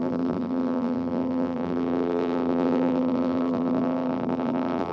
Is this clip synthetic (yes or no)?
yes